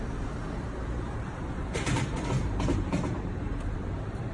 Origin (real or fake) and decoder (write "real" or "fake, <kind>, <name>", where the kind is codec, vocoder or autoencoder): fake, vocoder, BigVGAN v2